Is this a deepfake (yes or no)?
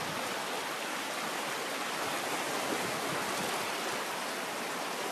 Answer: no